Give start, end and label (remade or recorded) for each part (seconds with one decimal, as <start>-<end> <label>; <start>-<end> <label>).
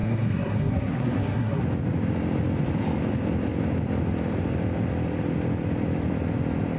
0.0-1.6 remade; 1.6-6.8 recorded